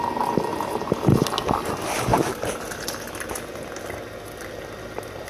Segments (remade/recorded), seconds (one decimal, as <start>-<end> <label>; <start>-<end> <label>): 0.0-0.5 recorded; 0.5-1.2 remade; 1.2-2.1 recorded; 2.1-2.8 remade; 2.8-5.3 recorded